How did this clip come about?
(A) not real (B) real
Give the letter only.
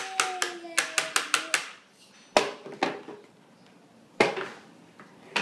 B